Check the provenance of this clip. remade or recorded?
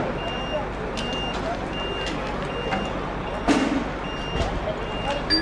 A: recorded